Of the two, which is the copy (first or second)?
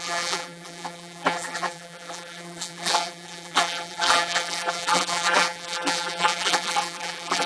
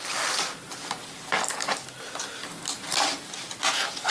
first